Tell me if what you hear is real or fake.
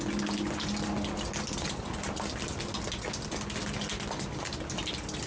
real